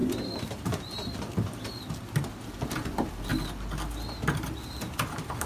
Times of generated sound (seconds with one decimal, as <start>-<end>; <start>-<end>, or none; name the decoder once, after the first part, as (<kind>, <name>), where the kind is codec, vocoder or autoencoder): 0.0-2.0 (vocoder, BigVGAN v2)

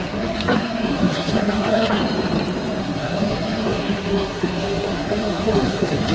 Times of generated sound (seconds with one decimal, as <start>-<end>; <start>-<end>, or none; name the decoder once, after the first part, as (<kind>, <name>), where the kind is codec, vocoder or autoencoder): 0.0-2.0 (codec, SNAC); 2.8-6.1

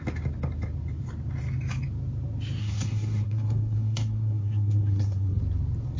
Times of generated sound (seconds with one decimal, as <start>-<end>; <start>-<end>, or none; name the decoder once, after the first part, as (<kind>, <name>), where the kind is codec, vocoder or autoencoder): 2.6-5.4 (codec, SNAC)

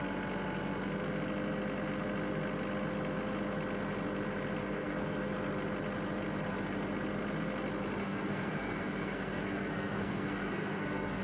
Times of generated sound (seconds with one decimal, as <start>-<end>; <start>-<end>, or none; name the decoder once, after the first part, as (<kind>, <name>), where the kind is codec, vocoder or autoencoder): 4.6-5.3 (codec, SNAC); 8.0-11.2

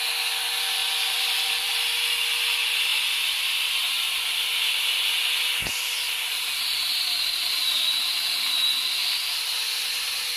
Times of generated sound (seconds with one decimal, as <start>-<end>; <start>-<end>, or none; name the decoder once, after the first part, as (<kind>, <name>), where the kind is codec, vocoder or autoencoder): 0.8-1.8 (vocoder, BigVGAN v2); 5.7-7.6

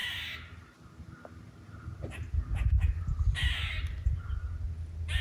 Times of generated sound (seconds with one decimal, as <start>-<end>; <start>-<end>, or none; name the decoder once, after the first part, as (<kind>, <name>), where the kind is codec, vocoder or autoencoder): none